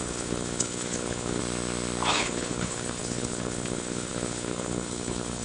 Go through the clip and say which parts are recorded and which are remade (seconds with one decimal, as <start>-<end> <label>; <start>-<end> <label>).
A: 0.0-1.4 remade; 1.4-2.1 recorded; 2.1-5.4 remade